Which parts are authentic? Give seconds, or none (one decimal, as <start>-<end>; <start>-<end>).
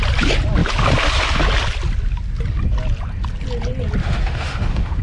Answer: 0.0-4.0